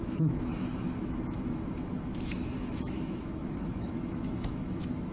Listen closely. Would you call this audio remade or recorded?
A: remade